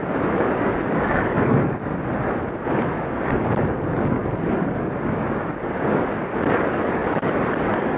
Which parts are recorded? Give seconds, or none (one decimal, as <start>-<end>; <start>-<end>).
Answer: 1.9-2.7